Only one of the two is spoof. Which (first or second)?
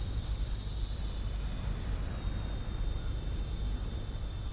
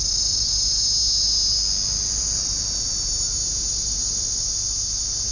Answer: first